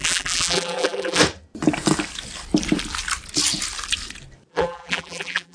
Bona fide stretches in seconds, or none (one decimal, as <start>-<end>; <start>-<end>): 1.2-4.5